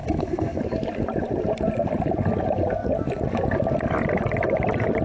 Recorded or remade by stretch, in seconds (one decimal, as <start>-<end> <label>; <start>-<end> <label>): 0.0-0.6 remade; 0.6-5.0 recorded